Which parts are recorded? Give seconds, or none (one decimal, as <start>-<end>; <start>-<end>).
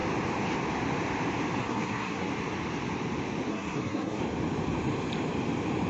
0.0-1.6; 2.3-3.5; 4.2-5.9